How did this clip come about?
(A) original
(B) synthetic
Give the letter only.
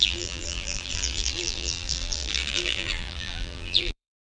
B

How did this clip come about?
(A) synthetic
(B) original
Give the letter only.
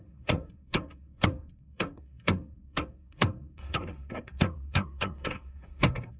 A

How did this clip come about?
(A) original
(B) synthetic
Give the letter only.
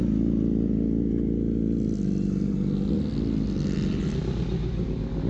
A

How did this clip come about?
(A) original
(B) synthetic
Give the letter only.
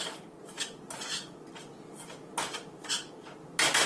A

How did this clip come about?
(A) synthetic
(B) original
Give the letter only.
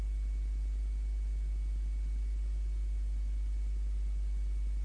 B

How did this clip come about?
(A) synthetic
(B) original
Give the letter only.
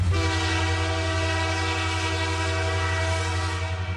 B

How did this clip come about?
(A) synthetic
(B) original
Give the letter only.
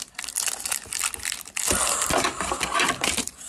B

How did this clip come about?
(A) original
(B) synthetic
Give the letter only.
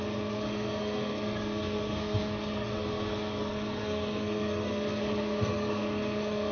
B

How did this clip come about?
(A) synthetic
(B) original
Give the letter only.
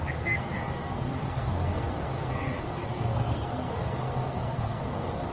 A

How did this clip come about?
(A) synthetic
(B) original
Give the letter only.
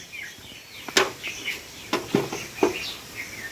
B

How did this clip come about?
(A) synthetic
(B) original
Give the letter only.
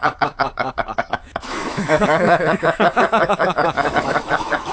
A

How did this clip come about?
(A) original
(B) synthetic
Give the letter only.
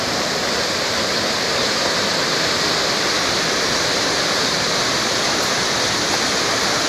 B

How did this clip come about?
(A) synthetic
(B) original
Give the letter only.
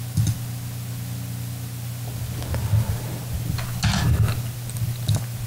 B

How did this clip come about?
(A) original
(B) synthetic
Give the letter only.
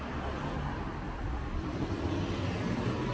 A